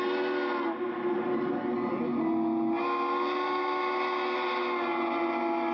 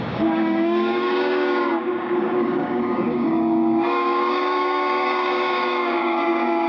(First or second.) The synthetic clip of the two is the second